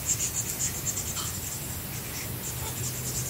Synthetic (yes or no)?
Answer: no